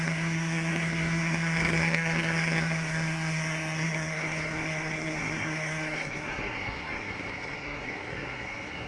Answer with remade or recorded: remade